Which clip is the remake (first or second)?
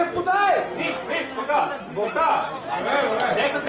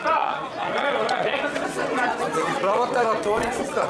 second